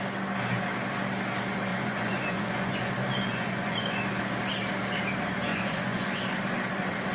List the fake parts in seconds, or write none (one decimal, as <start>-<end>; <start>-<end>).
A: 1.7-2.9; 3.3-4.0; 5.5-6.1